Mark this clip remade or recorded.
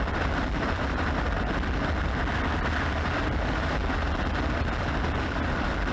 remade